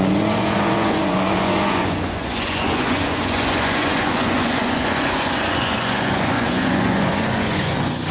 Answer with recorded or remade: remade